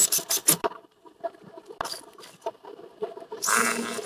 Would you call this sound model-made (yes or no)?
no